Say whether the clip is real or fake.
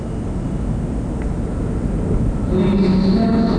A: real